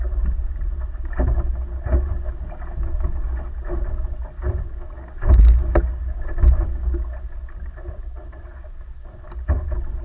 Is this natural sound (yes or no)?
yes